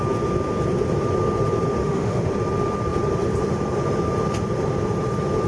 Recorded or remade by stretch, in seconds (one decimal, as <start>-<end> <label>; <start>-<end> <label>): 0.0-1.8 recorded; 1.8-2.3 remade; 2.3-5.5 recorded